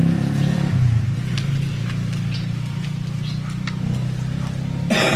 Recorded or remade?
recorded